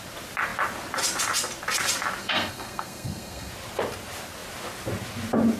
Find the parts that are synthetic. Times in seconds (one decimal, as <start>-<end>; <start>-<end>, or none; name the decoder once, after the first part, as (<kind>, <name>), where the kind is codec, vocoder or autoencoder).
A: 2.2-3.5 (codec, SNAC)